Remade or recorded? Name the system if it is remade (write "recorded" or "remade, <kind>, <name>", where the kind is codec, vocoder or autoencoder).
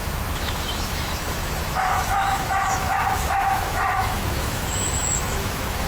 remade, autoencoder, DAC-VAE